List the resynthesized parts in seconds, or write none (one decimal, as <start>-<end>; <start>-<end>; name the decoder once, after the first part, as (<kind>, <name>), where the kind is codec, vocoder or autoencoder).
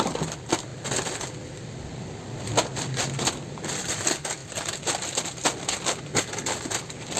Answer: none